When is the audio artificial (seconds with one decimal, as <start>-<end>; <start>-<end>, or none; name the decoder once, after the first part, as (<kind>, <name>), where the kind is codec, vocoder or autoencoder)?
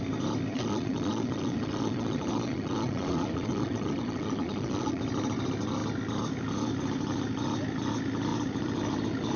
0.5-5.0 (vocoder, Vocos)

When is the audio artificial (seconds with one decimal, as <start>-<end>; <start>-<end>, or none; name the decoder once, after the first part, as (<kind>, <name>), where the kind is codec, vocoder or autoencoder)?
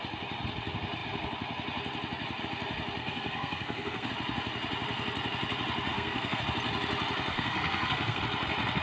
3.0-4.1 (codec, SNAC); 5.9-6.4; 7.3-8.2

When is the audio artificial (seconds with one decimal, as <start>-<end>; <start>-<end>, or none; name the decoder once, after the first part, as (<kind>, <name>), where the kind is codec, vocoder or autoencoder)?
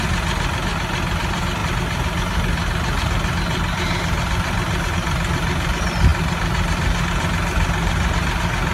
none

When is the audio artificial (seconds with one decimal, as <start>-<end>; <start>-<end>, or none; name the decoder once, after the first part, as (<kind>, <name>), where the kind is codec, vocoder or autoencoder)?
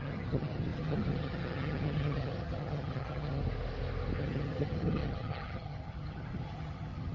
0.0-3.4 (vocoder, HiFi-GAN); 4.2-7.1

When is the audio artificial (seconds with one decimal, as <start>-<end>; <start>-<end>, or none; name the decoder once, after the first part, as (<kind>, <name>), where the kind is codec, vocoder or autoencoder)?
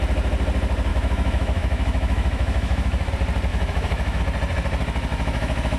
0.9-3.1 (autoencoder, DAC-VAE); 3.5-4.2; 5.1-5.8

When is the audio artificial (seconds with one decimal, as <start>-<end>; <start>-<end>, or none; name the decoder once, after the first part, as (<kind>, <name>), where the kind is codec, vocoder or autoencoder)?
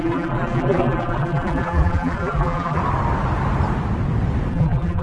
0.0-2.8 (vocoder, BigVGAN v2); 4.5-5.0